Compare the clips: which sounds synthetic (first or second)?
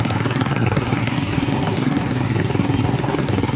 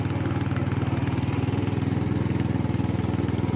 first